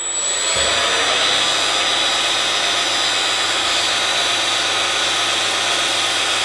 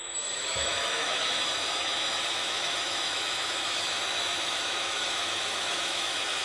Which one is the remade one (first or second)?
second